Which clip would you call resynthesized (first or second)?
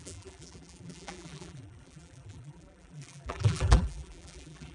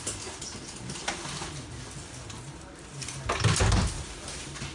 first